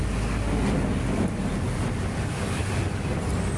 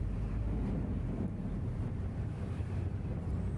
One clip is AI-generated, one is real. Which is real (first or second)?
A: first